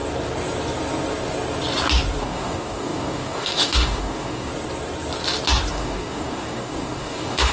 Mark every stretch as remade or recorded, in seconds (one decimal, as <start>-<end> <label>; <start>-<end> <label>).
0.0-2.2 recorded; 2.2-4.5 remade; 4.5-5.7 recorded; 5.7-7.5 remade